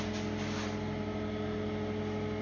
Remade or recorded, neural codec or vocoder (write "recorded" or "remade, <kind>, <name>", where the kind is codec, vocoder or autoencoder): recorded